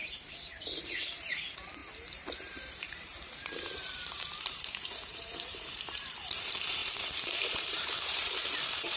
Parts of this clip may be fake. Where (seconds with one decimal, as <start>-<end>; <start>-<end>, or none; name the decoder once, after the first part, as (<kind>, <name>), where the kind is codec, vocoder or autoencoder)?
0.0-9.0 (vocoder, BigVGAN v2)